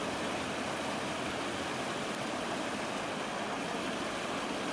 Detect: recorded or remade recorded